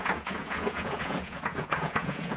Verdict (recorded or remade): remade